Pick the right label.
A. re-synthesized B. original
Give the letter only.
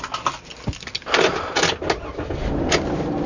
B